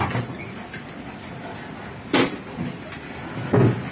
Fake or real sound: real